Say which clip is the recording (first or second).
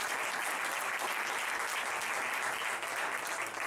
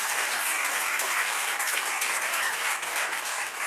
first